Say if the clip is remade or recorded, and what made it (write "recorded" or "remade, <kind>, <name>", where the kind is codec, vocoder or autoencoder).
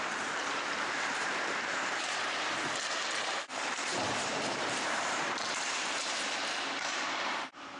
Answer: remade, vocoder, BigVGAN v2